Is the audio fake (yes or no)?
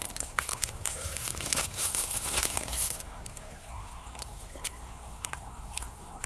yes